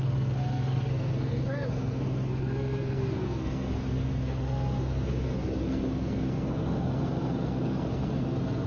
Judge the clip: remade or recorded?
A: remade